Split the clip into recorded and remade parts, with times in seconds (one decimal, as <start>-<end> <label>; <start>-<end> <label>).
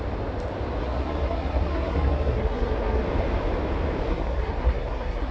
0.0-0.8 recorded; 0.8-3.0 remade; 3.0-4.1 recorded; 4.1-5.3 remade